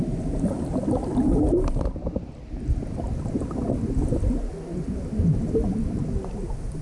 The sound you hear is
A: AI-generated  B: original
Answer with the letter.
B